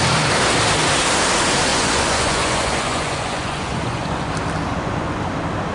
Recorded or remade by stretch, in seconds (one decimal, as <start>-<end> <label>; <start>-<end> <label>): 0.0-1.7 recorded; 1.7-4.3 remade; 4.3-4.7 recorded; 4.7-5.3 remade; 5.3-5.7 recorded